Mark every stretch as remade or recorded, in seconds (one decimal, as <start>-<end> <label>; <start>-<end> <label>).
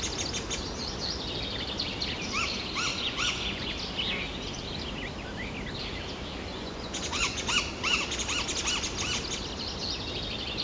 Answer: 0.0-2.9 recorded; 2.9-3.7 remade; 3.7-6.5 recorded; 6.5-7.5 remade; 7.5-10.6 recorded